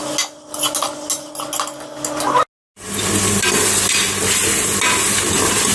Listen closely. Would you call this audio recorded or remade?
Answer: recorded